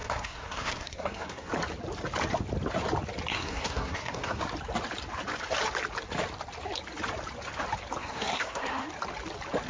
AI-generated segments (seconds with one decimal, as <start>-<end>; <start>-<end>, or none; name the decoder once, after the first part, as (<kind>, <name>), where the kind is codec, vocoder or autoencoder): 0.0-1.5 (codec, SNAC); 3.3-4.4; 8.0-8.9